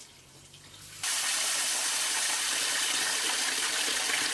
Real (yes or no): yes